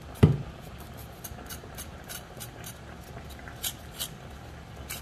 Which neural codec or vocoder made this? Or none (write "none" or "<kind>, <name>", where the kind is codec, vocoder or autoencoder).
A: vocoder, BigVGAN v2